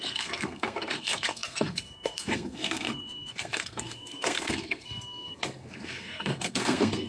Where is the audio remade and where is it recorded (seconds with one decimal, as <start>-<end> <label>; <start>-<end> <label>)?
0.0-7.1 remade